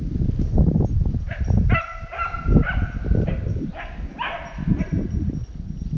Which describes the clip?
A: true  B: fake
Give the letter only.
A